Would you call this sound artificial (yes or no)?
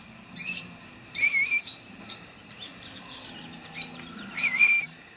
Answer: yes